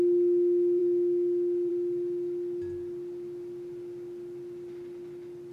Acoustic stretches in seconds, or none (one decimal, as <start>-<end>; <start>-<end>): 0.0-5.5